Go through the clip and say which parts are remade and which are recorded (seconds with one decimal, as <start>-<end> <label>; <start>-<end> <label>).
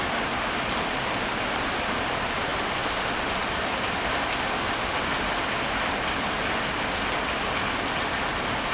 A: 0.0-8.7 recorded